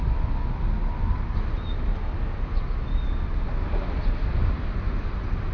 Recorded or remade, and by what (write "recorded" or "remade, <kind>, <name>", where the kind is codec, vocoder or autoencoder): recorded